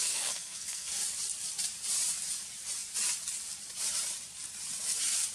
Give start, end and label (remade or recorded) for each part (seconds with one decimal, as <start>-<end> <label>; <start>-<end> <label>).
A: 0.0-1.0 remade; 1.0-5.3 recorded